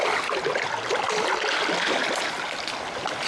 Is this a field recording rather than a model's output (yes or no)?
yes